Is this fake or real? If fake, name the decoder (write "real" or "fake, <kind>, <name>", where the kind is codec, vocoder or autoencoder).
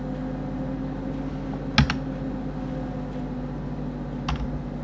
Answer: real